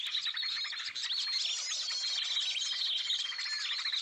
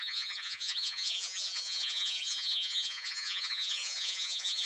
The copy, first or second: second